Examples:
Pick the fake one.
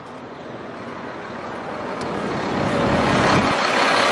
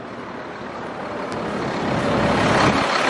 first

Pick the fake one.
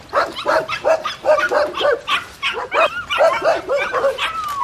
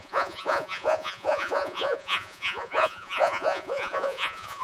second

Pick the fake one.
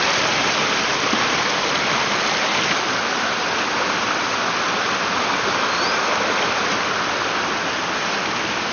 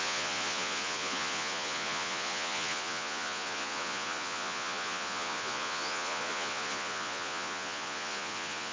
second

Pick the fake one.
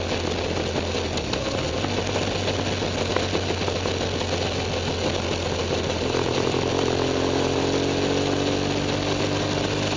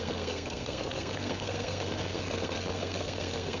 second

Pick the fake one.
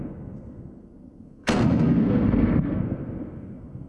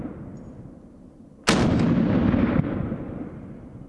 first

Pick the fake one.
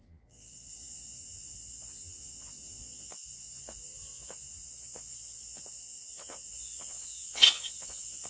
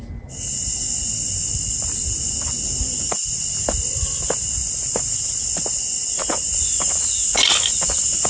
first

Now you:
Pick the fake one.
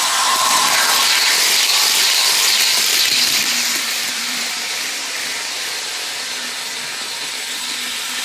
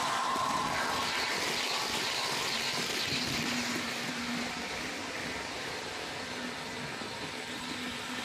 first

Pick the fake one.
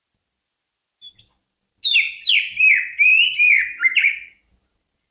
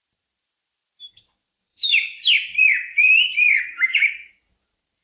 second